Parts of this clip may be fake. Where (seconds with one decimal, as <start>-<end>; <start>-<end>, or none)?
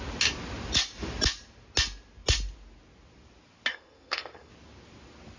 3.7-4.5